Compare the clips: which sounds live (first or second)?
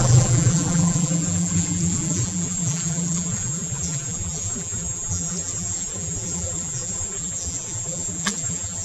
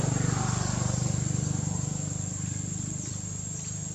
second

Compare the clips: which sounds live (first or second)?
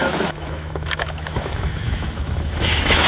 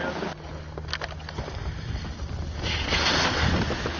second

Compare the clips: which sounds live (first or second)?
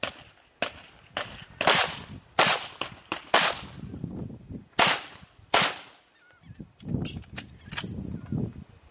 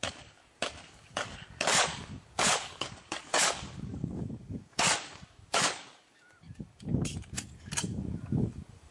first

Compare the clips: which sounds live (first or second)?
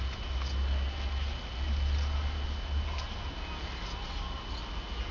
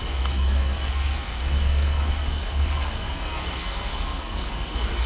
first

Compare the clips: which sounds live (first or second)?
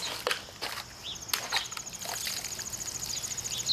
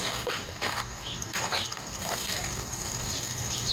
first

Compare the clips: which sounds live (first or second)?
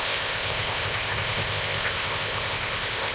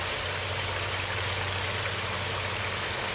second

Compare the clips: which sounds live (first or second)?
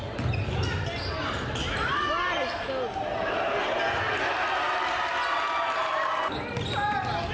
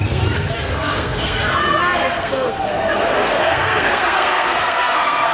first